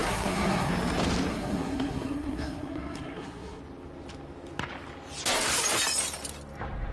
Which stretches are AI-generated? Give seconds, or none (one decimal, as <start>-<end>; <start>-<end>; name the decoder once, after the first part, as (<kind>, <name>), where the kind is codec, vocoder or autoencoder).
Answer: 0.0-0.7 (codec, SNAC); 1.3-3.6